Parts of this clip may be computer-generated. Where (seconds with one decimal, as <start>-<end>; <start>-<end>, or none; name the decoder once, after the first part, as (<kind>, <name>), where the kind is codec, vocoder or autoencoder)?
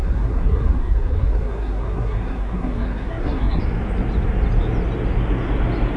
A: 0.0-3.6 (codec, SNAC)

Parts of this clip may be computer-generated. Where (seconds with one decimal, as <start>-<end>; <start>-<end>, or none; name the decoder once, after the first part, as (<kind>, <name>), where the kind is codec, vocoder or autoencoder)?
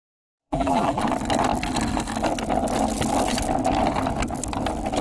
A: 0.4-1.0 (vocoder, BigVGAN v2)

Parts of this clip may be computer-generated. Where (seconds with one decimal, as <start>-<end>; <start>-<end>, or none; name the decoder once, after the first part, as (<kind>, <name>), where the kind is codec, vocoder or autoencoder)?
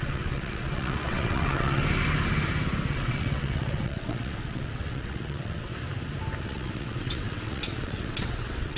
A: 0.0-1.8 (vocoder, WaveNeXt); 2.9-5.7; 6.4-8.8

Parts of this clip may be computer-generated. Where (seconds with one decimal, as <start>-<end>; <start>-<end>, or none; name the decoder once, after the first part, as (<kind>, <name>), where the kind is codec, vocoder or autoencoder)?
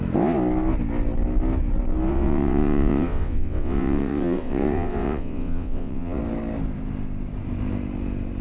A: 2.1-6.2 (vocoder, WaveNeXt)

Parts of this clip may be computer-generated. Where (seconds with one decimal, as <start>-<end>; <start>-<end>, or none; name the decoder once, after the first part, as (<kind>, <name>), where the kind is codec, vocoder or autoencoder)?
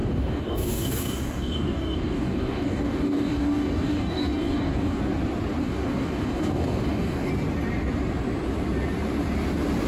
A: 0.0-5.0 (codec, DAC); 5.6-7.3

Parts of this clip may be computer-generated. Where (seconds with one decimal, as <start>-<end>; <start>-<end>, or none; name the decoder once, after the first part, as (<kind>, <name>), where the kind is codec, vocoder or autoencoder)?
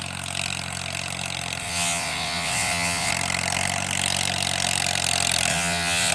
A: 1.6-3.1 (vocoder, WaveNeXt); 5.5-6.1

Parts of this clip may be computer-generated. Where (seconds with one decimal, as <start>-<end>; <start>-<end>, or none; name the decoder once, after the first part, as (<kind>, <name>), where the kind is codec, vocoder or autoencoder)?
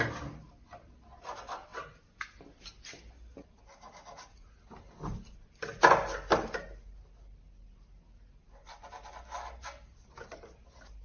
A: none